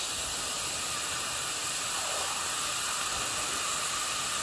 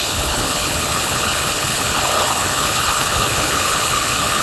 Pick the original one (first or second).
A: first